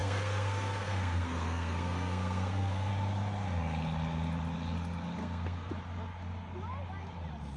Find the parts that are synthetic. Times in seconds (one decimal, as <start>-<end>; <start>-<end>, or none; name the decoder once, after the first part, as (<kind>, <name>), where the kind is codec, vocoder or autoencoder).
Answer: 0.0-2.9 (codec, SNAC); 5.2-5.7